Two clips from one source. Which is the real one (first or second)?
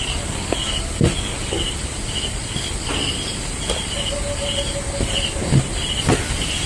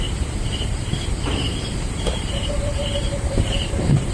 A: first